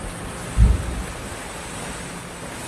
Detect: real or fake real